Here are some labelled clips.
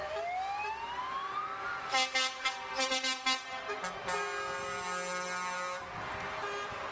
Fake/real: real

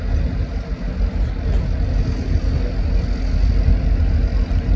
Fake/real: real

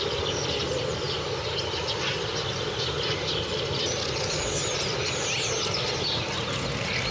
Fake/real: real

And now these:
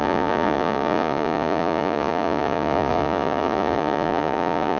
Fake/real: fake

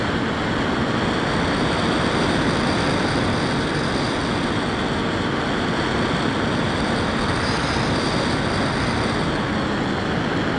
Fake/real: real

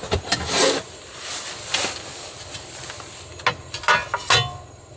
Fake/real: real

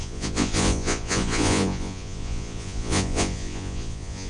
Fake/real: fake